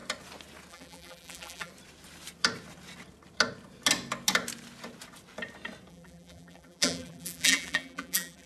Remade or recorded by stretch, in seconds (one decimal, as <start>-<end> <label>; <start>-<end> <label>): 0.0-0.7 recorded; 0.7-1.7 remade; 1.7-5.9 recorded; 5.9-8.5 remade